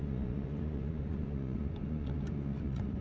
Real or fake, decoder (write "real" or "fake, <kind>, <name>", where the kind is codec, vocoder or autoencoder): fake, vocoder, Vocos